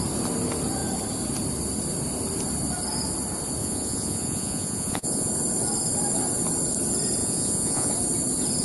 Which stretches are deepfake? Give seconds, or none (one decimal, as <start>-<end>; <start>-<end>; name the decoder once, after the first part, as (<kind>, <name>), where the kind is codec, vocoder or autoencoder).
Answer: 3.6-5.3 (vocoder, Vocos); 7.2-7.9